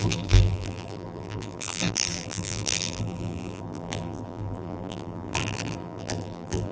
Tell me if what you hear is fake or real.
fake